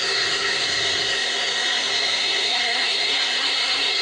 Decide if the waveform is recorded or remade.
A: remade